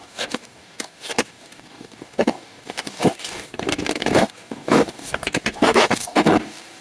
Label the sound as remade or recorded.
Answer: remade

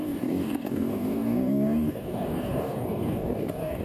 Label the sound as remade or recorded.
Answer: remade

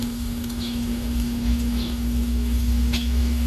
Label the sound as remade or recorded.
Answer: remade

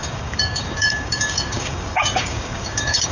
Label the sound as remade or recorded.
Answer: remade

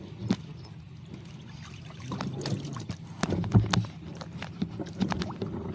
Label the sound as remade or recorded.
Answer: recorded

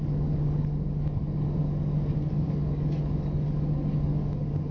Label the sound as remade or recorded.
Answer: remade